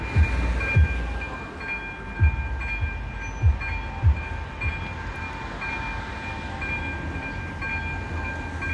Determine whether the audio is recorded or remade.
recorded